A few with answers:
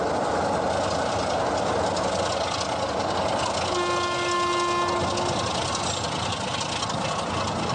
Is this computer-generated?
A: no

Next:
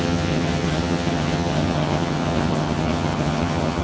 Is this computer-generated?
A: yes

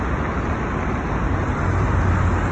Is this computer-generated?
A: no